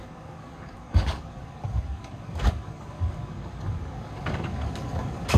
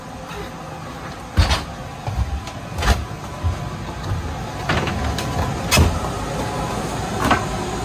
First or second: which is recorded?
second